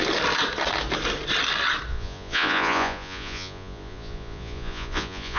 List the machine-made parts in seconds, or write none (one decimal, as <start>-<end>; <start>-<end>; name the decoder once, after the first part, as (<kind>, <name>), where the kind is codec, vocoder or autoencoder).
1.9-5.4 (vocoder, Vocos)